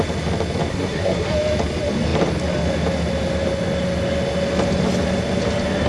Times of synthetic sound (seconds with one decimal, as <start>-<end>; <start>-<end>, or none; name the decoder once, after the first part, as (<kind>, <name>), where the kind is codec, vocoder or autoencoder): 0.7-1.3 (codec, SNAC)